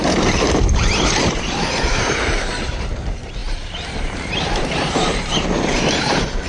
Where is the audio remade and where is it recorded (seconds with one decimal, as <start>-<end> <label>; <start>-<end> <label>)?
0.0-6.5 remade